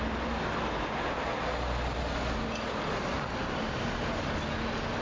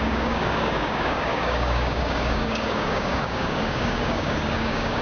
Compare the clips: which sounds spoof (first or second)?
second